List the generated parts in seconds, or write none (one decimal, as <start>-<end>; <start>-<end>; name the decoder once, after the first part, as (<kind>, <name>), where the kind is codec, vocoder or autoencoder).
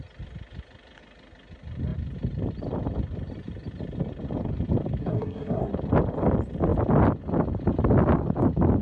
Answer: 5.0-5.7 (codec, SNAC)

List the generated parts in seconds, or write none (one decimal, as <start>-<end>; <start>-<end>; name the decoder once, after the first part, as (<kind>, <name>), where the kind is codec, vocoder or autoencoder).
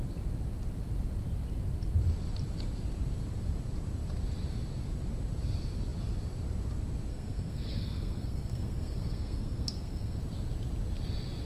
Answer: 7.1-10.2 (codec, SNAC)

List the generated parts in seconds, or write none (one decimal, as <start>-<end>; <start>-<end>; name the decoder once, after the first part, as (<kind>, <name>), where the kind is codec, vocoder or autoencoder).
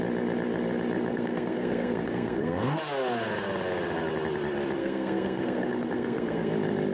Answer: 1.1-2.8 (codec, SNAC); 4.8-6.5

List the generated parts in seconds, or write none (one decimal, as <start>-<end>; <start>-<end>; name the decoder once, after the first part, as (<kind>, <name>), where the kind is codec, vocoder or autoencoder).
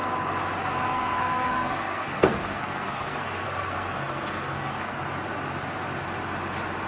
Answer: 0.9-5.0 (codec, SNAC)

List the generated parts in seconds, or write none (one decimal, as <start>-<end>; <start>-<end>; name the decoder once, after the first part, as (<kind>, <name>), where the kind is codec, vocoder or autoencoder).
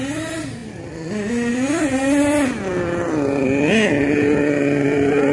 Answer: none